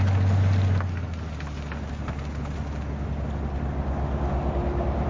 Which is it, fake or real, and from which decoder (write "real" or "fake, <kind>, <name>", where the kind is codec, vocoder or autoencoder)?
real